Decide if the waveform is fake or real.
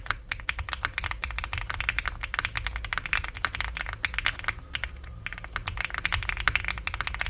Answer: real